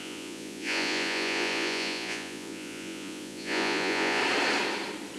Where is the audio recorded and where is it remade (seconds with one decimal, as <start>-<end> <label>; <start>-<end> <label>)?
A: 0.0-4.2 remade; 4.2-5.2 recorded